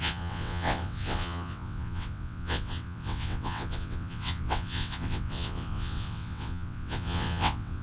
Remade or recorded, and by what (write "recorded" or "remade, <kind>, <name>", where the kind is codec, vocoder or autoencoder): remade, vocoder, WaveNeXt